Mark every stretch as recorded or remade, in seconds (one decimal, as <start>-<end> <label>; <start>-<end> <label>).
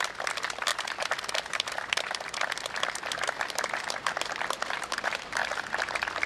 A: 0.0-6.3 recorded